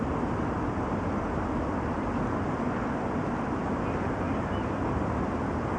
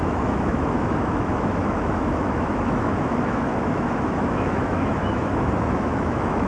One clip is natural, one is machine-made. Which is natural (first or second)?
first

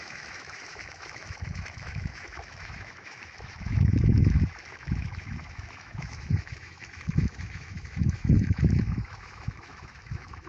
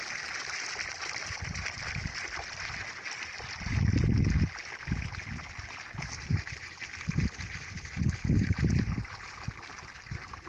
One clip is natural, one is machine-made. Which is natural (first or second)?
second